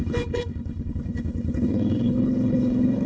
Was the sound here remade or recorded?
remade